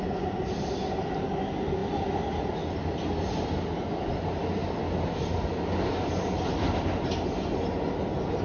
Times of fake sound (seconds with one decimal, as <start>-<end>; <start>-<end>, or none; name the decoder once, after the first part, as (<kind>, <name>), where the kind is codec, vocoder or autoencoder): none